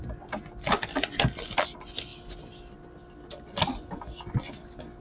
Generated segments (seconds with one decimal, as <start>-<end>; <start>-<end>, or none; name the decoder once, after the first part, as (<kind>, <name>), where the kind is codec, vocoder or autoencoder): none